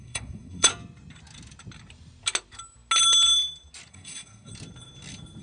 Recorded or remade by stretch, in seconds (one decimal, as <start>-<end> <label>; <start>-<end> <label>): 0.0-0.7 remade; 0.7-3.9 recorded; 3.9-4.5 remade; 4.5-5.4 recorded